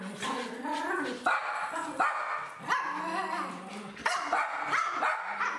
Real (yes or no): yes